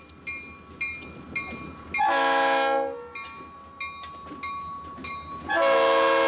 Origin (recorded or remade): recorded